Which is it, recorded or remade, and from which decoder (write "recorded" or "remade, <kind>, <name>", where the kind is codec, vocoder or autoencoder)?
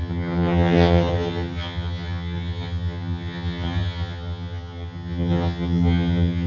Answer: remade, vocoder, HiFi-GAN